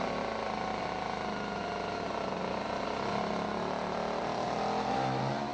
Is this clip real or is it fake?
real